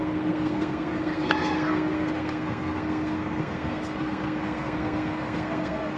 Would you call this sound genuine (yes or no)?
no